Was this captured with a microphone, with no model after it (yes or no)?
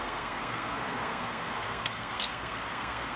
no